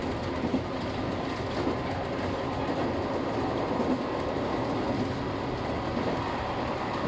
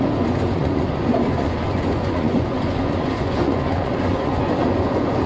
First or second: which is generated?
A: second